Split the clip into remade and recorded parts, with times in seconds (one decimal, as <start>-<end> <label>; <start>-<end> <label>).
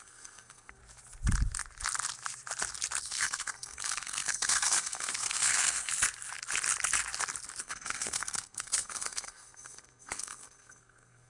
0.0-0.8 remade; 0.8-3.0 recorded; 3.0-5.9 remade; 5.9-7.6 recorded; 7.6-11.3 remade